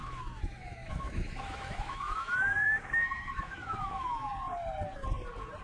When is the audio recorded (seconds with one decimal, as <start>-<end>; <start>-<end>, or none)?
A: 4.3-5.6